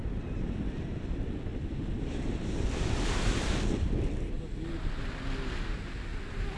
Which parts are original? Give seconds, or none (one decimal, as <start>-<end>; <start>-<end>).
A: 0.0-6.6

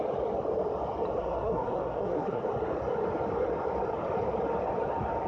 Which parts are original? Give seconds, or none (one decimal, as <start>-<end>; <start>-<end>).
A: 0.0-1.2; 2.4-5.3